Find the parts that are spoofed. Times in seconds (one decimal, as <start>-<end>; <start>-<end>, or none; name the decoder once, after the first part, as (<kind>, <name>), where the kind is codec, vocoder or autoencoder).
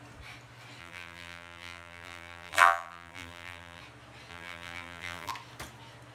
0.8-3.8 (vocoder, BigVGAN v2); 4.3-5.3